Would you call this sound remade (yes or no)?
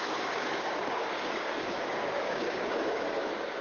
yes